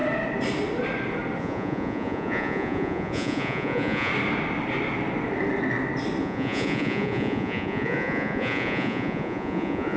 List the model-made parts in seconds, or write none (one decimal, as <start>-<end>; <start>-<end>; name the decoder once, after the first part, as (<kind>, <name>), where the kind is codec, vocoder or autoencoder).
1.4-4.1 (vocoder, Vocos); 6.2-10.0